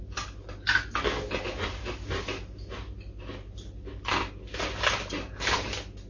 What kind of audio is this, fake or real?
real